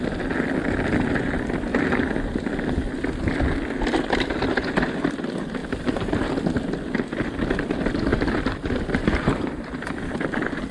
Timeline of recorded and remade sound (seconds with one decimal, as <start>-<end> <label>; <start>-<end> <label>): 0.0-1.7 recorded; 1.7-2.5 remade; 2.5-5.6 recorded; 5.6-6.2 remade; 6.2-8.1 recorded; 8.1-9.8 remade; 9.8-10.7 recorded